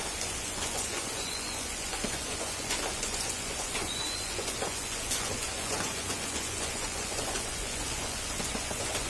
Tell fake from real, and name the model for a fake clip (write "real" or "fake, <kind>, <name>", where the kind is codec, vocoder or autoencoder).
fake, vocoder, Vocos